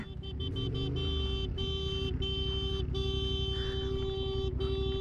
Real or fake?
real